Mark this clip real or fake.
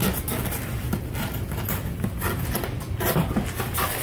real